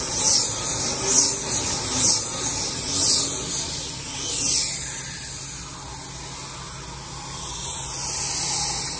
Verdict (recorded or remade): recorded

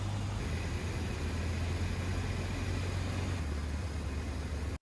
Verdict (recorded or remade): recorded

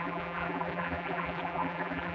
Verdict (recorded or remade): remade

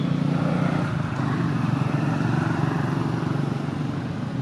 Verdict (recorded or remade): recorded